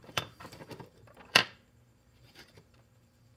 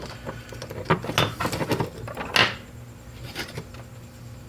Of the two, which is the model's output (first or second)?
first